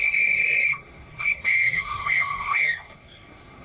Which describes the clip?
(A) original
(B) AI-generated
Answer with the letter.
B